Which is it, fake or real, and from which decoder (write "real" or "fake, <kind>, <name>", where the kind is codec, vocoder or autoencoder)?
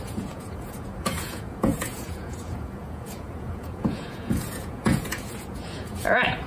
fake, vocoder, Vocos